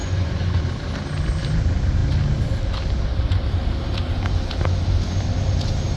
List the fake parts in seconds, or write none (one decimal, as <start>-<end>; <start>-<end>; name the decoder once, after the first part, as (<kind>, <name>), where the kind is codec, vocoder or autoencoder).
0.0-0.6 (vocoder, Vocos)

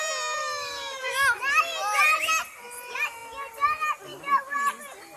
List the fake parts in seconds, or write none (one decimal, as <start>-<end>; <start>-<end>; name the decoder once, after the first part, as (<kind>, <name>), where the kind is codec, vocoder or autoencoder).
0.4-1.4 (autoencoder, DAC-VAE)

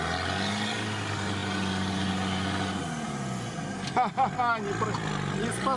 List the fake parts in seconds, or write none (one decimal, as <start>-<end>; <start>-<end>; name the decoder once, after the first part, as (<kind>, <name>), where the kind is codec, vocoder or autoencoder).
none